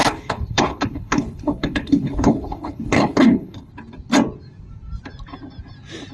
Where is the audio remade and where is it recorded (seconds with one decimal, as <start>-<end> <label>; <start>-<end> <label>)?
0.0-3.7 remade; 3.7-6.1 recorded